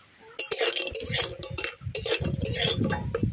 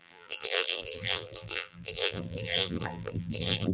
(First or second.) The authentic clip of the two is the first